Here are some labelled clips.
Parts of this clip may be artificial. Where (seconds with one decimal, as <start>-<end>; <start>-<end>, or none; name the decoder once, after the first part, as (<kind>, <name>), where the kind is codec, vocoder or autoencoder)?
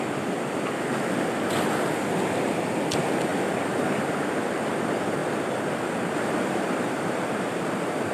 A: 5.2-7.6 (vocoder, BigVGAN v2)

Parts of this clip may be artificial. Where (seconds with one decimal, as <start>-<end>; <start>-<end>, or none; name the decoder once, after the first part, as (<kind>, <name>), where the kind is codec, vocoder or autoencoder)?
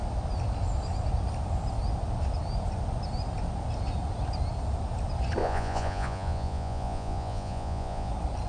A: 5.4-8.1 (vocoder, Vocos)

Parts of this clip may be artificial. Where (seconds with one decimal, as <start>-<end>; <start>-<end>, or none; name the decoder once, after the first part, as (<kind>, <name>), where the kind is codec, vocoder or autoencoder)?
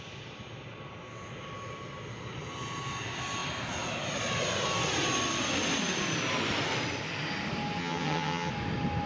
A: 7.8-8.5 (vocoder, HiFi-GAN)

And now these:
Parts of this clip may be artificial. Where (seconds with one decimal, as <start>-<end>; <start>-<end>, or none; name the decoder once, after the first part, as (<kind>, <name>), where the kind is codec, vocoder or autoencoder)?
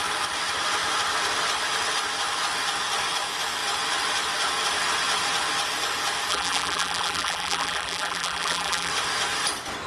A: 6.3-8.9 (vocoder, BigVGAN v2)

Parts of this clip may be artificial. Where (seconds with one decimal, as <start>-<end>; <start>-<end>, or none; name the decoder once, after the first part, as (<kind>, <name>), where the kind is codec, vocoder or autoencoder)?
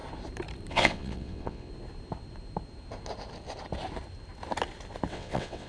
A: 0.7-1.7 (vocoder, WaveNeXt); 5.1-5.7